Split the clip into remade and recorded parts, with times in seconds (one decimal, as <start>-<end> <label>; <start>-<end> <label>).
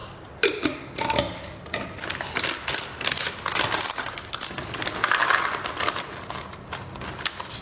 0.0-7.6 recorded